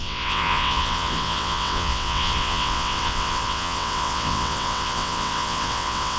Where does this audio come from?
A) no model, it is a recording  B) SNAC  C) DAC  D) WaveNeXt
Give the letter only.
D